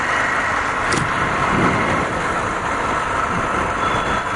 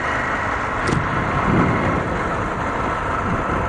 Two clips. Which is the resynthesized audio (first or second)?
first